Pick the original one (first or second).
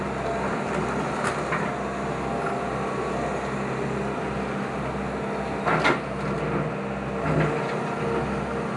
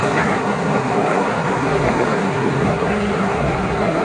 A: first